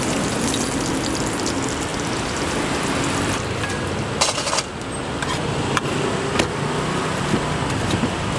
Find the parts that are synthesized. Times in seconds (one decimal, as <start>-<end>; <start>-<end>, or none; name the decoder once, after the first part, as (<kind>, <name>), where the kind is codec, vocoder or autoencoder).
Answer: none